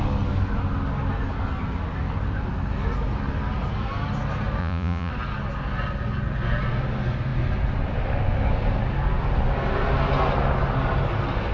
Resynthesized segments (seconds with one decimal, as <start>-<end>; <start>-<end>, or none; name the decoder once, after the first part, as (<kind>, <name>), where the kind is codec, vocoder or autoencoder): 4.6-5.1 (vocoder, Vocos)